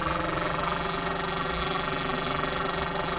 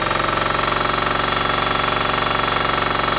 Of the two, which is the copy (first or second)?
first